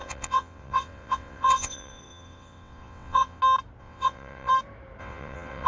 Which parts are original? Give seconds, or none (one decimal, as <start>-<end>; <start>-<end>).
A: 3.4-3.8; 4.5-5.0